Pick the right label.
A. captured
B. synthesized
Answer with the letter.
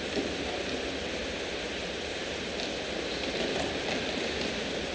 A